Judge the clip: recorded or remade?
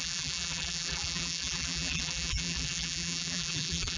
remade